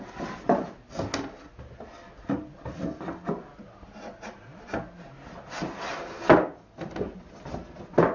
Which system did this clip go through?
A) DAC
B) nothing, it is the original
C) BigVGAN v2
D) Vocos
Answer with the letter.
B